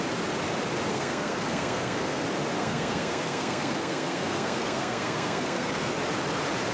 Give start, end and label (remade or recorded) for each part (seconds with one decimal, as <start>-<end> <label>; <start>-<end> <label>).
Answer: 0.0-0.9 recorded; 0.9-2.2 remade; 2.2-2.6 recorded; 2.6-5.9 remade; 5.9-6.7 recorded